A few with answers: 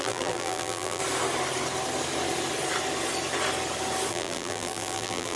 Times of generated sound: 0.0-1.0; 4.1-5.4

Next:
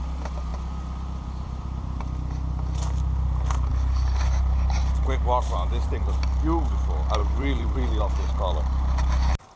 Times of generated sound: 0.5-2.0; 3.7-6.0; 7.2-8.0

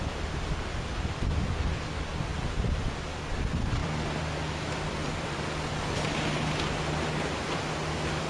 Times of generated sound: 3.8-5.4

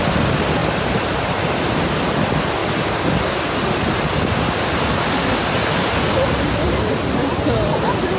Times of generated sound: 0.6-1.6

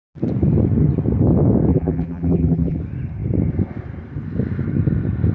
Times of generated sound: 1.7-2.8

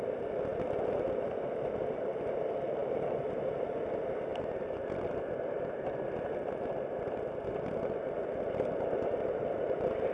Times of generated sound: 2.8-3.3